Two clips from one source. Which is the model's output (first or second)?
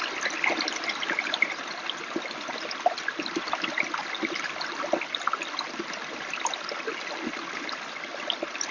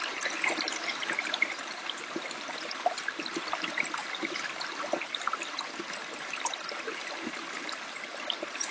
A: second